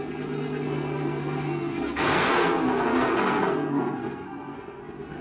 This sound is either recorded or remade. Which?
remade